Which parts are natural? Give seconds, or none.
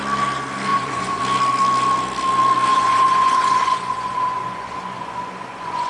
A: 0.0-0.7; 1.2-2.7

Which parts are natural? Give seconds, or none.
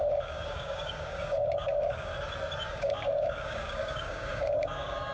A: 2.1-2.7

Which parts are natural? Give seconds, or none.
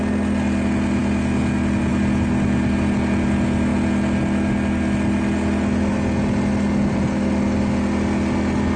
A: 0.0-8.8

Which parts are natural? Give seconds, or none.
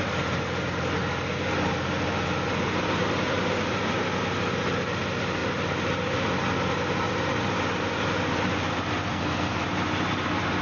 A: 0.0-9.1; 9.6-10.6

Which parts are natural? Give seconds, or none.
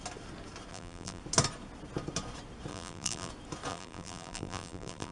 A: 0.0-0.7; 1.2-2.7; 3.3-3.7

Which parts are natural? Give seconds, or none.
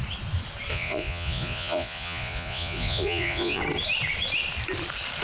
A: 0.0-0.7; 3.6-5.2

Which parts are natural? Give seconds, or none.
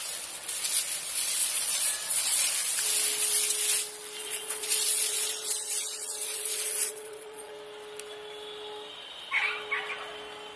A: 0.0-1.4; 2.5-4.2; 7.5-10.6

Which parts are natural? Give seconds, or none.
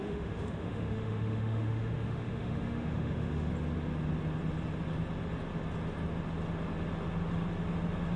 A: 3.5-8.2